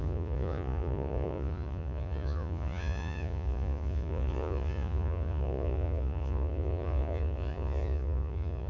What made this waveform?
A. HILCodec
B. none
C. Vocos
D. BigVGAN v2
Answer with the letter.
C